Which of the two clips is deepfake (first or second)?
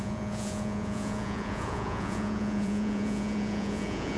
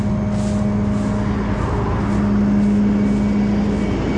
first